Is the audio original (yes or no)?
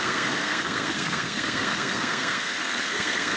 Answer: no